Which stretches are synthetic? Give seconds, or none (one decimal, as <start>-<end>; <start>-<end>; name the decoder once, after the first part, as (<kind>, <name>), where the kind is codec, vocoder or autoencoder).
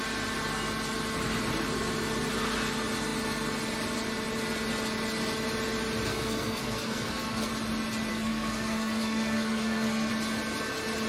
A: 6.1-7.5 (codec, SNAC); 8.1-10.1